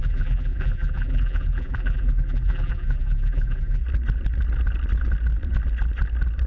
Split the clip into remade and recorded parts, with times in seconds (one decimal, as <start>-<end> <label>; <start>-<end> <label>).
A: 0.0-3.8 remade; 3.8-6.5 recorded